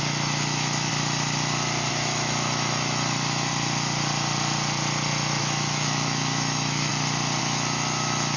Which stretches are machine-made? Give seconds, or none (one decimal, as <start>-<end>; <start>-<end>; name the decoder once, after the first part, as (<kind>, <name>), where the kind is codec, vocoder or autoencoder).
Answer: 0.0-0.9 (autoencoder, DAC-VAE); 1.9-3.5; 5.4-6.9; 7.4-8.4